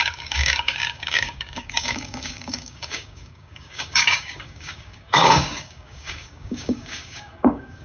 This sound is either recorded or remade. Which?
remade